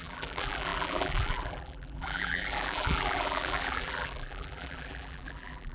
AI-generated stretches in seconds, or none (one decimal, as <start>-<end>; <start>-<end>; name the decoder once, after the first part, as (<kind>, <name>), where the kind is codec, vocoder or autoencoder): 0.0-5.7 (vocoder, BigVGAN v2)

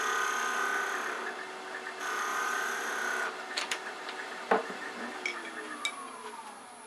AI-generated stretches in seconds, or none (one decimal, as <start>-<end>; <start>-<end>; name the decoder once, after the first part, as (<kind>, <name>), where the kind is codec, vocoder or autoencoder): 2.3-5.0 (vocoder, BigVGAN v2)